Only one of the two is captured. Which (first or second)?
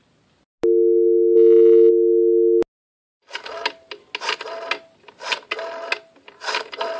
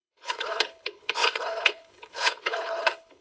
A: first